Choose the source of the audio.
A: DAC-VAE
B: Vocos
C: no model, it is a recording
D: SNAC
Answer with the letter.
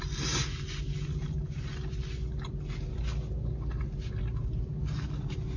C